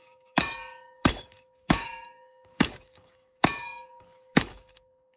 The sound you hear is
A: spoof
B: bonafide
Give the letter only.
A